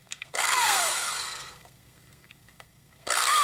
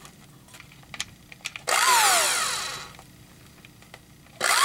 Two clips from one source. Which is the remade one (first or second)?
first